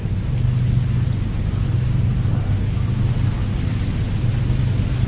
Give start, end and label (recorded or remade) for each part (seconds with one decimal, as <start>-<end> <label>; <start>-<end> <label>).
0.0-5.1 recorded